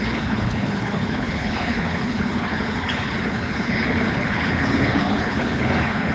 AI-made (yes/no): yes